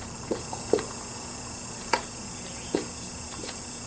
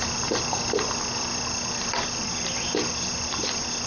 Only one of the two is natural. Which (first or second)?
second